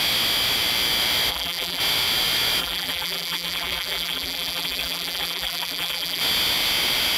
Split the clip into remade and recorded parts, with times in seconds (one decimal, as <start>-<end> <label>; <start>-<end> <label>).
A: 0.0-1.3 recorded; 1.3-1.8 remade; 1.8-2.6 recorded; 2.6-6.2 remade; 6.2-7.2 recorded